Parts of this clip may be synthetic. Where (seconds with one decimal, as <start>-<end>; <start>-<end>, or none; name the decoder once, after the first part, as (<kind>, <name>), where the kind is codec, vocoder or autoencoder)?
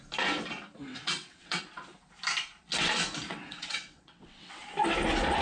0.9-1.6 (vocoder, WaveNeXt); 3.3-4.6